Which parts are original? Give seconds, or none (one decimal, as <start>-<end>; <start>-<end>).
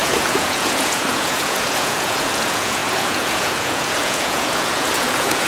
none